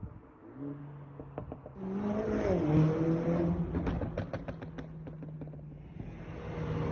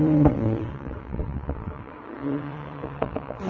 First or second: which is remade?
second